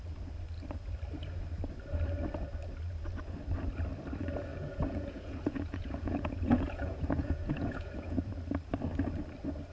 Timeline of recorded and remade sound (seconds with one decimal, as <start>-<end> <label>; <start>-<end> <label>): 0.0-4.5 recorded; 4.5-8.2 remade; 8.2-9.7 recorded

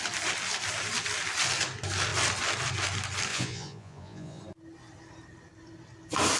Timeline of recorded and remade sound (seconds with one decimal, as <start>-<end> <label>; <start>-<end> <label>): 0.0-3.3 recorded; 3.3-4.4 remade; 4.4-6.4 recorded

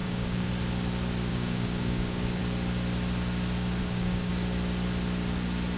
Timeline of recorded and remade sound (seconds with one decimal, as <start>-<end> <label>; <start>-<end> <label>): 0.0-0.5 remade; 0.5-1.3 recorded; 1.3-2.4 remade; 2.4-3.8 recorded; 3.8-4.3 remade; 4.3-5.8 recorded